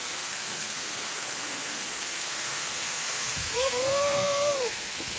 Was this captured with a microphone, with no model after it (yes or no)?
no